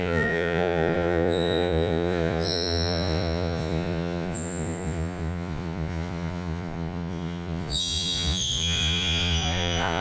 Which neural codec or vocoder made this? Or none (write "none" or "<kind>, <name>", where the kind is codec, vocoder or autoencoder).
vocoder, Vocos